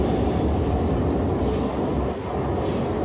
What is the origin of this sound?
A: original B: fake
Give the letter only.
A